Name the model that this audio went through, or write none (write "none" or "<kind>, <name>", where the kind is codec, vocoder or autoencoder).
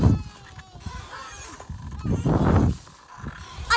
none